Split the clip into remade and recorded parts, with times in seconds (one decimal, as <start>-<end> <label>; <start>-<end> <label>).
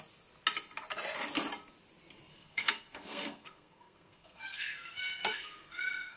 0.0-2.3 recorded; 2.3-6.2 remade